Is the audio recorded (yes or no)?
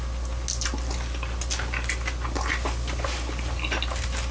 yes